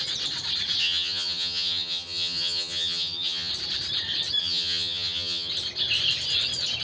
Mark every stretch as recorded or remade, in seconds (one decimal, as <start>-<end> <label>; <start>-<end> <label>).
0.0-0.8 recorded; 0.8-3.5 remade; 3.5-4.4 recorded; 4.4-5.5 remade; 5.5-6.8 recorded